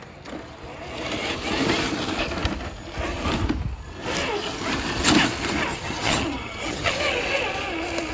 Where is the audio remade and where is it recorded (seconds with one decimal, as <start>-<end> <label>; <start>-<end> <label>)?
0.0-5.7 recorded; 5.7-6.9 remade; 6.9-8.1 recorded